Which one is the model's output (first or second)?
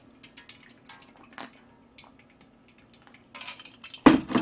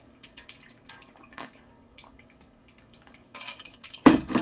second